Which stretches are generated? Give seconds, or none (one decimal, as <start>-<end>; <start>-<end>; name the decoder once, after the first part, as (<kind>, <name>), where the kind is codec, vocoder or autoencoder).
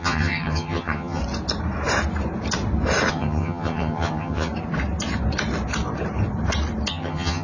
0.0-1.2 (vocoder, HiFi-GAN); 3.1-4.5; 6.9-7.4